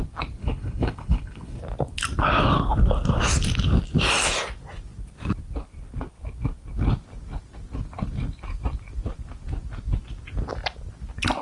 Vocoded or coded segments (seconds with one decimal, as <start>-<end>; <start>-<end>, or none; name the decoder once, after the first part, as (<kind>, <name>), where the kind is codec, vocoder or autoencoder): 0.4-1.6 (codec, HILCodec)